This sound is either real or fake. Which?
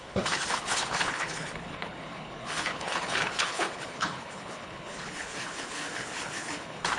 fake